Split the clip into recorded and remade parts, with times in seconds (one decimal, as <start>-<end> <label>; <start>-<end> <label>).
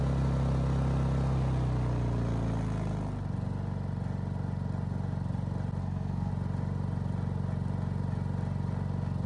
0.0-5.8 recorded; 5.8-6.3 remade; 6.3-9.3 recorded